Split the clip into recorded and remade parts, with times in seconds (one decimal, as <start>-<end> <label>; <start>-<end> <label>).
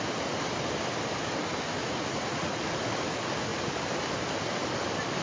0.0-1.8 recorded; 1.8-2.6 remade; 2.6-5.2 recorded